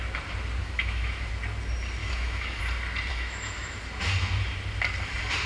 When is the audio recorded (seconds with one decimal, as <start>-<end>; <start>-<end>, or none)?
0.0-0.6; 1.3-2.0; 2.6-3.1; 3.8-5.5